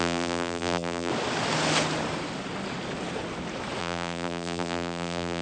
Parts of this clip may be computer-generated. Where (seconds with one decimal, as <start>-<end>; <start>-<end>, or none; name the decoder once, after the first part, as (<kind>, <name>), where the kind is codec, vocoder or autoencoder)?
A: 0.0-1.1 (vocoder, BigVGAN v2); 3.8-5.4